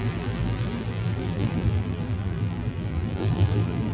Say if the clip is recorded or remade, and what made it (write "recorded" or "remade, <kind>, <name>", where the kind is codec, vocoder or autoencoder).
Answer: remade, vocoder, BigVGAN v2